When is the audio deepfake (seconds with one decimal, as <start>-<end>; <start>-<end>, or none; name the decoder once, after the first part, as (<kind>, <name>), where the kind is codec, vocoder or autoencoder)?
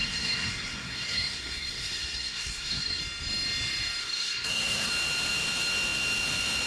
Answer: 0.0-3.0 (codec, SNAC); 4.0-4.9